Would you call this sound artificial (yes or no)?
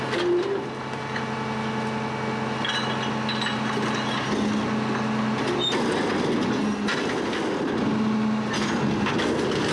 no